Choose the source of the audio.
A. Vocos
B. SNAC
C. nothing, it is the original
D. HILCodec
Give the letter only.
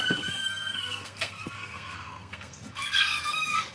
B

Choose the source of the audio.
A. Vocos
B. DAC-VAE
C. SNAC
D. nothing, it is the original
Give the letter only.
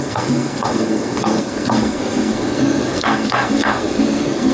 C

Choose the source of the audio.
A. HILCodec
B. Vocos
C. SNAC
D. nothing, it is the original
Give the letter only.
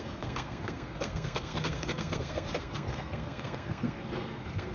C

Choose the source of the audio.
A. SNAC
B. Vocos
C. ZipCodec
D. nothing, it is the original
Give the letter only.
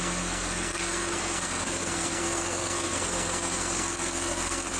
A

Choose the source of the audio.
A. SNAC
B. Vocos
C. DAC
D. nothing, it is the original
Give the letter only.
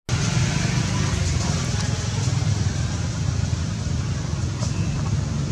D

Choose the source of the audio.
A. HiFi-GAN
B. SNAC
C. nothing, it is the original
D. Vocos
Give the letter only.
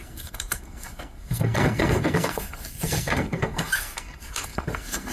B